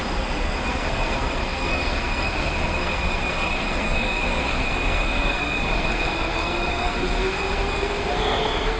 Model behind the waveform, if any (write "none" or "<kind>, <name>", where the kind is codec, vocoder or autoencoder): codec, SNAC